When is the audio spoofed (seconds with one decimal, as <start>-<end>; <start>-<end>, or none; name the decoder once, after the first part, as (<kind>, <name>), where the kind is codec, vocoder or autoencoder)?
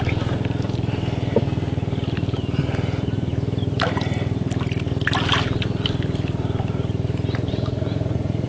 7.5-8.5 (vocoder, Vocos)